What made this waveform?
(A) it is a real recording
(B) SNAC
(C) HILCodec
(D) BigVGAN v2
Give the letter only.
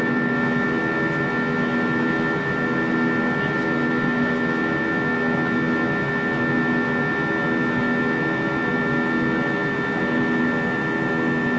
A